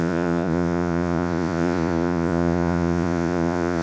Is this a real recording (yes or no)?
no